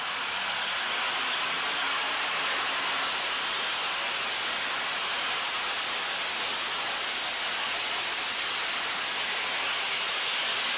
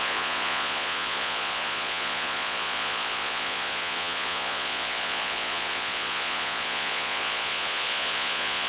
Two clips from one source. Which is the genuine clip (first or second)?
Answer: first